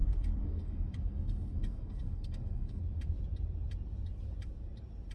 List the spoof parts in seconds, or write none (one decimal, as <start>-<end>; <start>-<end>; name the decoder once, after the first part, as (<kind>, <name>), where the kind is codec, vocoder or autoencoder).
0.0-2.8 (codec, SNAC)